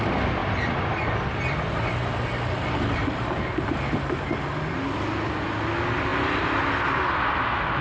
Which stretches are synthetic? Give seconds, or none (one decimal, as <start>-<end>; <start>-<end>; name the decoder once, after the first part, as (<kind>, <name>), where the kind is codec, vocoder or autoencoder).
none